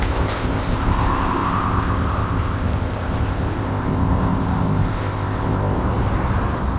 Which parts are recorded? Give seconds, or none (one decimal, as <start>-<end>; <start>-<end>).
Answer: 5.8-6.8